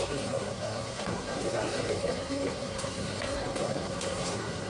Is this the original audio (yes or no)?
no